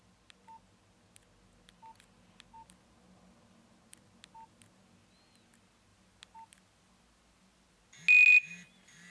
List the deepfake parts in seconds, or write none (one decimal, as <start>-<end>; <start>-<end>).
none